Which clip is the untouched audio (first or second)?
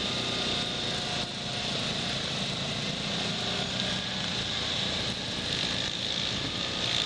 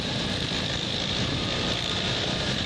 first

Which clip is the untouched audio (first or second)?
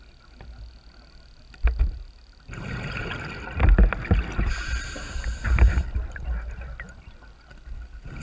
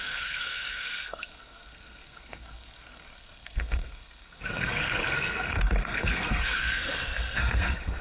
first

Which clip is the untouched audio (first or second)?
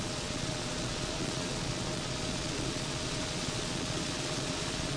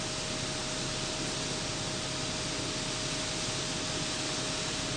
second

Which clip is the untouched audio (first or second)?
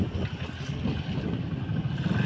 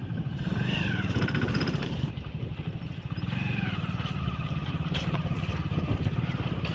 first